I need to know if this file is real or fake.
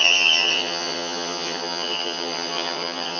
fake